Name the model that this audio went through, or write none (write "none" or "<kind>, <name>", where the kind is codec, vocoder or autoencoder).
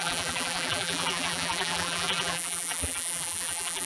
vocoder, BigVGAN v2